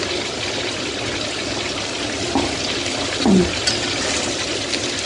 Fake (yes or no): no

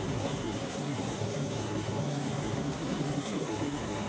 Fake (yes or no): yes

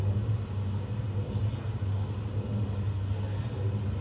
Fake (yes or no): no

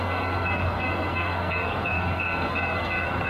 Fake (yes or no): yes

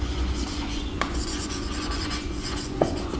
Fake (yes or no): yes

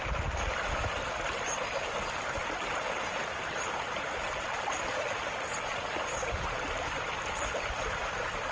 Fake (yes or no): no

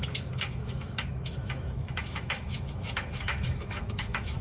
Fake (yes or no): yes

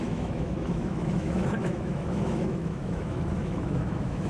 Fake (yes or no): yes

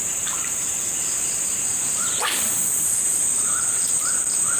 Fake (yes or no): yes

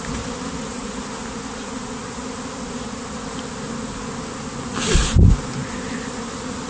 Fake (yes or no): no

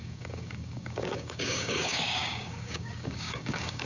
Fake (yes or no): yes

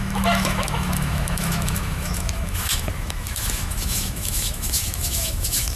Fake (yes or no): yes